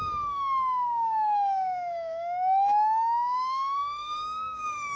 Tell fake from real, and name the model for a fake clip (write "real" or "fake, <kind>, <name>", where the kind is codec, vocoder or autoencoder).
fake, autoencoder, DAC-VAE